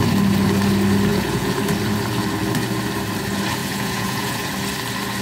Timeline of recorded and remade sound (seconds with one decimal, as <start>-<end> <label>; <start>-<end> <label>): 0.0-1.1 recorded; 1.1-1.6 remade; 1.6-3.6 recorded; 3.6-4.5 remade; 4.5-5.2 recorded